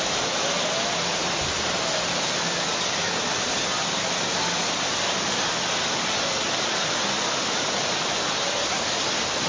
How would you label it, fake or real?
real